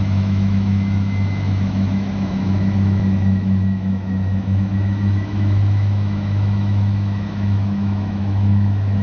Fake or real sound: fake